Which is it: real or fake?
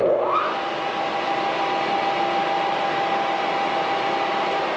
real